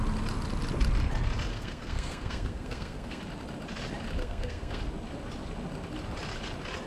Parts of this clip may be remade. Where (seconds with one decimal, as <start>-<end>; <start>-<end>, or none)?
1.5-3.2; 4.2-4.8